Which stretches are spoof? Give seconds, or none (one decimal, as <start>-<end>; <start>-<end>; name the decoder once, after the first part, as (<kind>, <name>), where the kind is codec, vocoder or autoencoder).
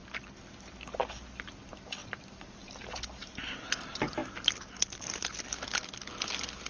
0.0-0.8 (vocoder, BigVGAN v2); 2.0-2.8